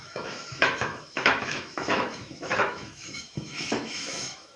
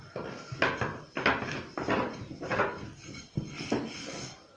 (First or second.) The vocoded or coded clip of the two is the first